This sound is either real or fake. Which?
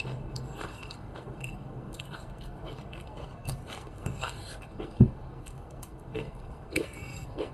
fake